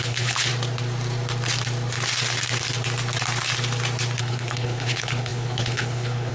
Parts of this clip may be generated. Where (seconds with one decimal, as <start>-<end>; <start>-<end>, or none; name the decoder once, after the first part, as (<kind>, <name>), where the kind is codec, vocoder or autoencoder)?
0.0-0.5 (codec, HILCodec); 4.2-6.3